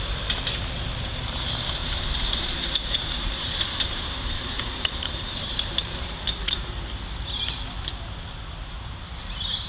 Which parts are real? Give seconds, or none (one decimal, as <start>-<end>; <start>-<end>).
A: 0.0-1.8; 6.8-9.7